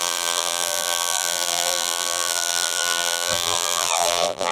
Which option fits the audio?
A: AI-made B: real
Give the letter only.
A